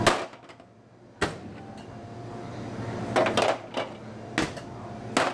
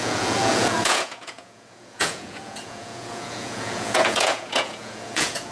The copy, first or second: second